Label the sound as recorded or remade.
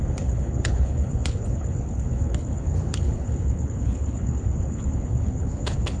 remade